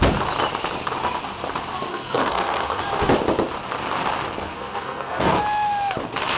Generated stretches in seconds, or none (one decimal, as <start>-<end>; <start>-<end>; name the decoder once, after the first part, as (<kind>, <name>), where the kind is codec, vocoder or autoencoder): 1.9-2.8 (codec, SNAC); 4.5-5.4

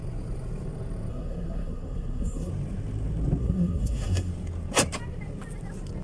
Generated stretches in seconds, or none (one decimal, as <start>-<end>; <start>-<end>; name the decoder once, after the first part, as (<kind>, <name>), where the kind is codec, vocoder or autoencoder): 1.1-2.5 (codec, SNAC); 3.4-4.3